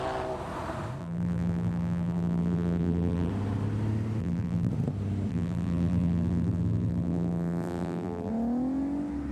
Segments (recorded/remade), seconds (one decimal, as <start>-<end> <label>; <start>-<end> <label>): 0.0-1.0 recorded; 1.0-3.3 remade; 3.3-4.2 recorded; 4.2-4.7 remade; 4.7-5.3 recorded; 5.3-8.3 remade; 8.3-9.3 recorded